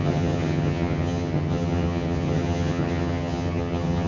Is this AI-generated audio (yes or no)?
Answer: yes